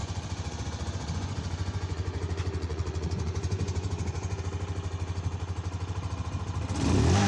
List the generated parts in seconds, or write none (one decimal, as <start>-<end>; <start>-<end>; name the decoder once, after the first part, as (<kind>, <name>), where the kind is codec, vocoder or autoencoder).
0.0-4.4 (vocoder, Vocos)